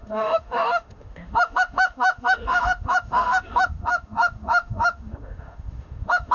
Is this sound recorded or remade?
remade